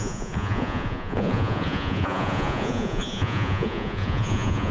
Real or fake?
fake